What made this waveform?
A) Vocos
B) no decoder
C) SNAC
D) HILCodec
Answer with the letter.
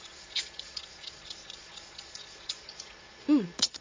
A